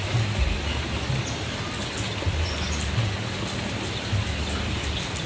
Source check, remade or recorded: recorded